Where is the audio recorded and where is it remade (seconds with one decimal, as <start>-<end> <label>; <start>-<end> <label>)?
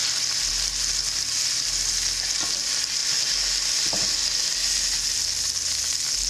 0.0-6.3 recorded